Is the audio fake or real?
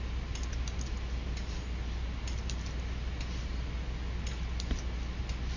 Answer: real